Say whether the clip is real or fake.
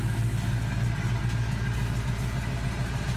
real